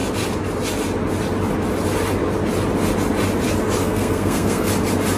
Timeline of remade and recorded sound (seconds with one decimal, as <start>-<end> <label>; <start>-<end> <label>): 0.0-3.8 recorded; 3.8-4.7 remade; 4.7-5.2 recorded